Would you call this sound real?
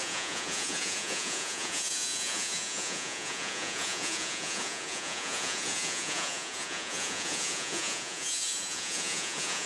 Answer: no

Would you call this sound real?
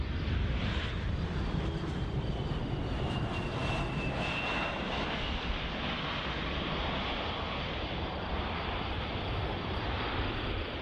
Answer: yes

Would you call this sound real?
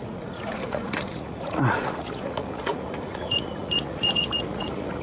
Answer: no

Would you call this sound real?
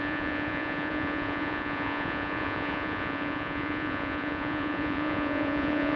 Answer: no